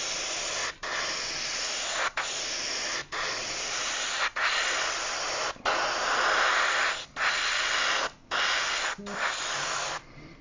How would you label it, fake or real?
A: real